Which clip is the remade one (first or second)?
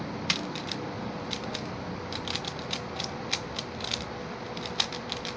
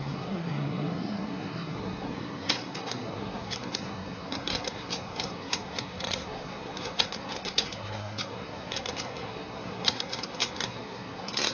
second